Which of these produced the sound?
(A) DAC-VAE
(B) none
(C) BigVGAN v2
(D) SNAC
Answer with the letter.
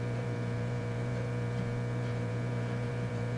C